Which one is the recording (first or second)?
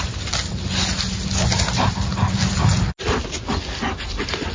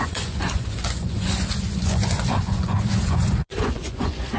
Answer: first